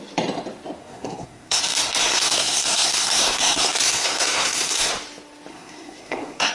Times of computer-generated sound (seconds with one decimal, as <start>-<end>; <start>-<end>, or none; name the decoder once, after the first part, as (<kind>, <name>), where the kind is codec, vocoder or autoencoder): 0.8-1.6 (codec, SNAC); 2.0-4.9; 5.5-6.5